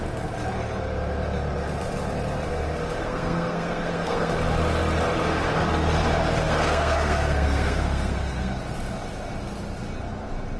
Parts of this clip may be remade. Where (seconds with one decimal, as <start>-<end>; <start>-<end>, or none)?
3.0-4.3; 6.4-8.6

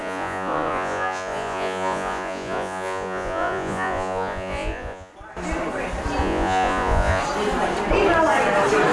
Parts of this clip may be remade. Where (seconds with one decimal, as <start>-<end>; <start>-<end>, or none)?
0.0-5.1; 6.2-7.2

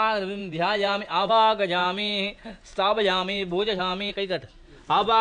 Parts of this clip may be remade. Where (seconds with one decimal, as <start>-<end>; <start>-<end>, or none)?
0.4-1.3; 1.8-4.1